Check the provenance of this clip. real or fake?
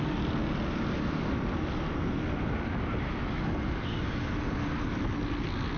real